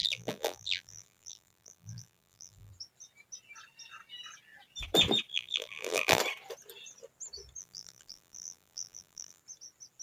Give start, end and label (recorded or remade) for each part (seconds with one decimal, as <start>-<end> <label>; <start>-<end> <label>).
0.0-2.7 remade; 2.7-5.3 recorded; 5.3-6.2 remade; 6.2-7.6 recorded; 7.6-9.4 remade; 9.4-10.0 recorded